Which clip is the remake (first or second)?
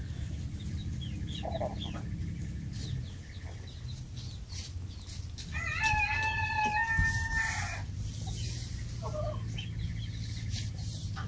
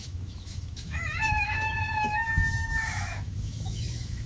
second